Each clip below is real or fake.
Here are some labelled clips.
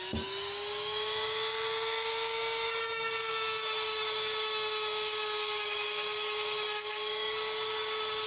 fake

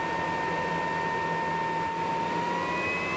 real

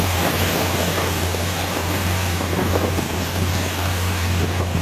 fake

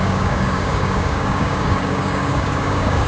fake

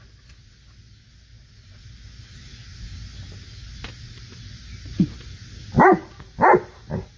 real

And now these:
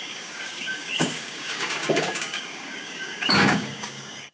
fake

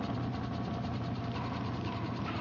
real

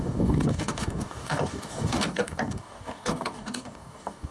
fake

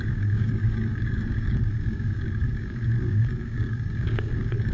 fake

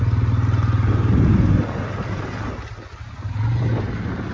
real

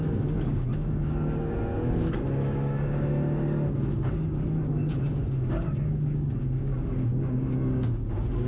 fake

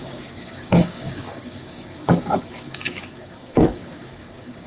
fake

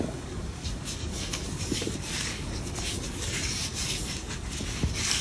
fake